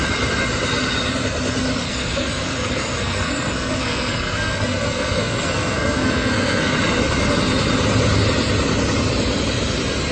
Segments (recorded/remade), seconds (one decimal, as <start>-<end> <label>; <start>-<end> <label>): 0.0-1.8 recorded; 1.8-6.7 remade; 6.7-10.1 recorded